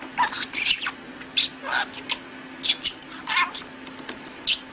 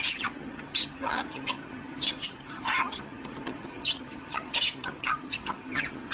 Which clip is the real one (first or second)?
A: first